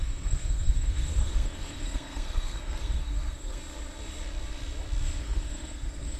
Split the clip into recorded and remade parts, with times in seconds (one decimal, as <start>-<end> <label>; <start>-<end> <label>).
0.0-3.6 remade; 3.6-5.2 recorded; 5.2-6.2 remade